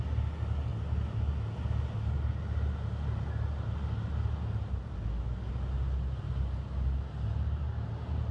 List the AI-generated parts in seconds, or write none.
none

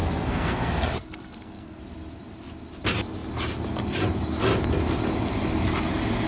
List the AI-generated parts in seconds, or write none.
0.0-1.8 (codec, SNAC)

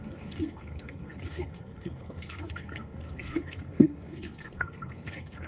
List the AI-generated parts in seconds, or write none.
0.0-5.5 (codec, SNAC)

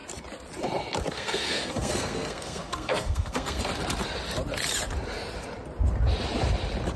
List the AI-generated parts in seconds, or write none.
1.1-3.7 (codec, SNAC)

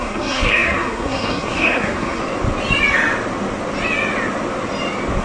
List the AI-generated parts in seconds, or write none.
0.0-2.2 (codec, SNAC)